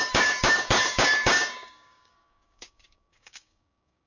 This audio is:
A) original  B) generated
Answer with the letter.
B